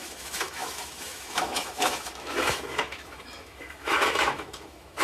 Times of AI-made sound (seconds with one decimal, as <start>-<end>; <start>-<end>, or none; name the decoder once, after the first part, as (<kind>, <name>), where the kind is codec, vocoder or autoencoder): 0.0-5.0 (autoencoder, DAC-VAE)

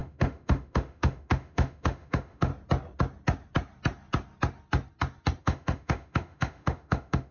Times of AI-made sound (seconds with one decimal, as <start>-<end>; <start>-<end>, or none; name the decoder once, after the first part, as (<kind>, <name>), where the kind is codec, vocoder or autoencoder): 0.0-2.5 (autoencoder, DAC-VAE); 5.4-7.3

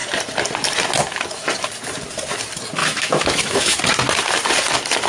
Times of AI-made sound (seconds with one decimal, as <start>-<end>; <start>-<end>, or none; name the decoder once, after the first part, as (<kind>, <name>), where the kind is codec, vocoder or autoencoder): 2.8-3.8 (autoencoder, DAC-VAE)

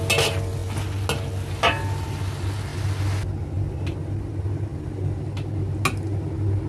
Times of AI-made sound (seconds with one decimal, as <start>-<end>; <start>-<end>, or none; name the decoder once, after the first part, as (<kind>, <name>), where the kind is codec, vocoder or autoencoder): none